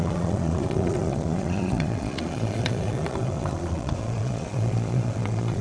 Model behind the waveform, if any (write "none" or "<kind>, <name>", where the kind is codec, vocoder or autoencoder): vocoder, Vocos